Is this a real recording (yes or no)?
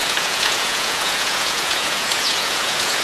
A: no